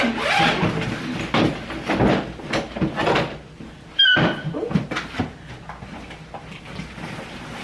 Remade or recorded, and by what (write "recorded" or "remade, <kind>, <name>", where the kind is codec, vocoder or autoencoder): recorded